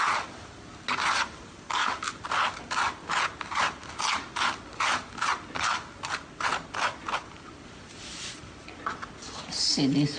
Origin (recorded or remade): recorded